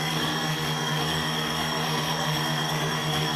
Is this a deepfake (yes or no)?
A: yes